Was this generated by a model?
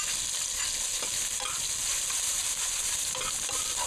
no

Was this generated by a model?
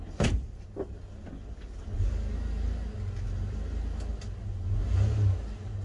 no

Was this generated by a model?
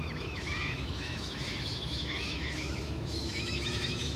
yes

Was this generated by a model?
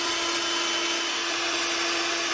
no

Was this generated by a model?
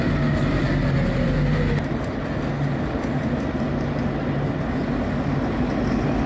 no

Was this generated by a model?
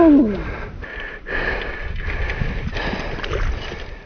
no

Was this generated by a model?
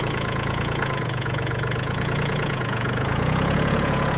yes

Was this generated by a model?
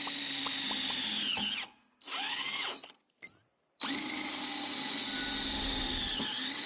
no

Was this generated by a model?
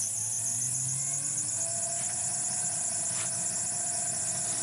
no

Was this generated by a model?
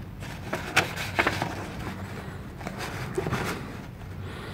no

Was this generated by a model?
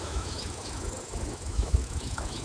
yes